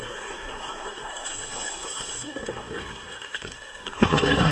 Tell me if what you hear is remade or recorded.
remade